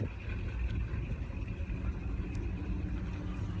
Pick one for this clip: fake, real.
real